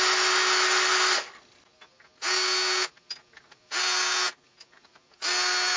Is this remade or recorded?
recorded